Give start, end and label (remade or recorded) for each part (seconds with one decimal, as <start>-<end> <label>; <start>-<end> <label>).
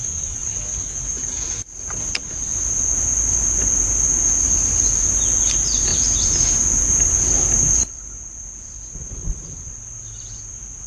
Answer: 0.0-1.1 recorded; 1.1-2.4 remade; 2.4-5.9 recorded; 5.9-7.6 remade; 7.6-10.9 recorded